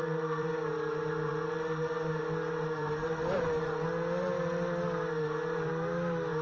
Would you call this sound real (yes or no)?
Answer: no